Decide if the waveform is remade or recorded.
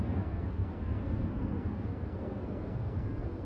remade